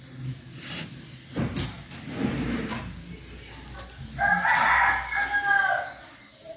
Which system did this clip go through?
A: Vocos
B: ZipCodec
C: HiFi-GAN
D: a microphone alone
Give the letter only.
D